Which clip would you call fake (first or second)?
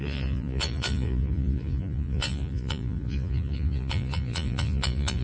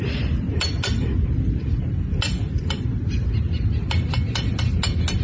first